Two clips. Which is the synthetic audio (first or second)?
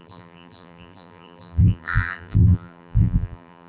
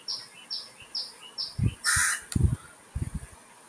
first